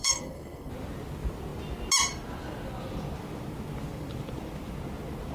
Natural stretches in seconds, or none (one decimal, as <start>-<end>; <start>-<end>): 0.7-5.3